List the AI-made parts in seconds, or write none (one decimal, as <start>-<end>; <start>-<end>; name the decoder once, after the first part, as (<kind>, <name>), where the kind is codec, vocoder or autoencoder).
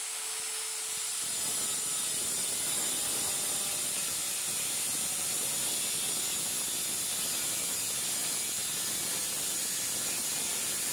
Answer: none